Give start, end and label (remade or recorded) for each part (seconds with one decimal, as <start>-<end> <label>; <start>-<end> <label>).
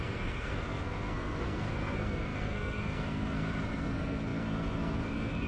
0.0-5.5 remade